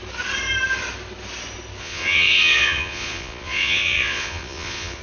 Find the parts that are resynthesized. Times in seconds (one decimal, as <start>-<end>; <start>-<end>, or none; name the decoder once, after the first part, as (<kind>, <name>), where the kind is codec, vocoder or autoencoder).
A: 1.8-5.0 (vocoder, Vocos)